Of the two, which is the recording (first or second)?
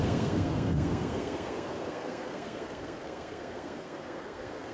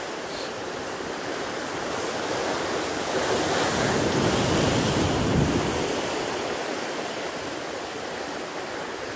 second